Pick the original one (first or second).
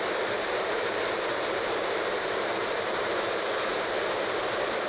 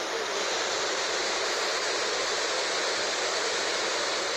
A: second